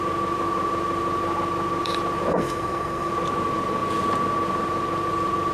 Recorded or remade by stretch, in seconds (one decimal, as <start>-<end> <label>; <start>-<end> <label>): 0.0-2.3 recorded; 2.3-3.1 remade; 3.1-5.5 recorded